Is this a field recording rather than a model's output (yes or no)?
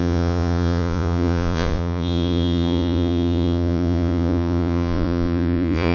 no